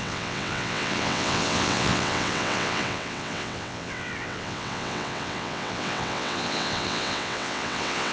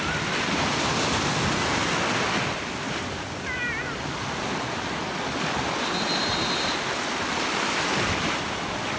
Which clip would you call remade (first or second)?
first